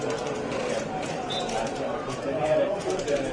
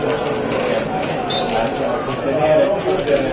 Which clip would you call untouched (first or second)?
second